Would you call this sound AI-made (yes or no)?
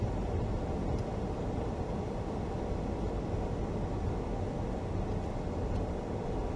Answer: no